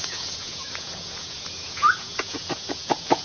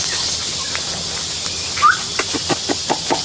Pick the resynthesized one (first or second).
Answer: first